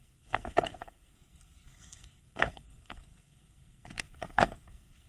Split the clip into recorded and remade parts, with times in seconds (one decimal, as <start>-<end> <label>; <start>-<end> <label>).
0.0-5.1 remade